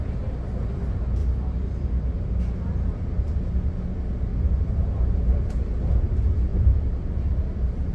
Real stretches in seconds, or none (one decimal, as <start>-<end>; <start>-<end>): 0.0-1.2; 3.1-4.3; 5.5-6.5